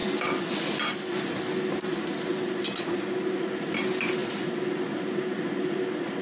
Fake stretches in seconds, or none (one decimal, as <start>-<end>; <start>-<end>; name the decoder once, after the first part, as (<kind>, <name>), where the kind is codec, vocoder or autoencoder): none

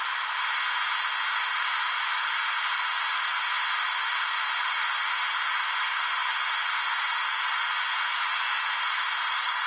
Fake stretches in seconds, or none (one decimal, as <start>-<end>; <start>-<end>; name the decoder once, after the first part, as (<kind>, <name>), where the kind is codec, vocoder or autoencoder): none

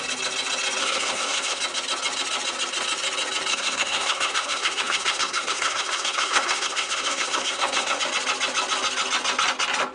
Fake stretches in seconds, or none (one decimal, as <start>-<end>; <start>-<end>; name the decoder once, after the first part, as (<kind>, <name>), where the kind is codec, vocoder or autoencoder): 0.8-1.6 (codec, SNAC); 3.5-8.0

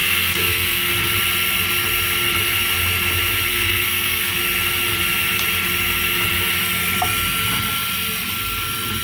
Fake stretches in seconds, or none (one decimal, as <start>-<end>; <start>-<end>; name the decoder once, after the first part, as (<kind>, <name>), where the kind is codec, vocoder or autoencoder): 0.0-0.9 (codec, SNAC); 3.5-4.4

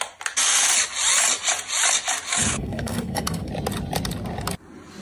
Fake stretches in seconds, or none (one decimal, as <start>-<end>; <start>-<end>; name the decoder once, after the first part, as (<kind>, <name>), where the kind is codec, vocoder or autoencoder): 2.3-3.5 (codec, SNAC)

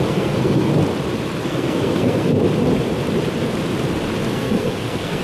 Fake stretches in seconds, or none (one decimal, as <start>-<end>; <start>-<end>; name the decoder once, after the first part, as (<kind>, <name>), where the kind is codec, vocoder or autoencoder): 0.0-0.7 (codec, SNAC); 1.4-2.3; 4.3-5.2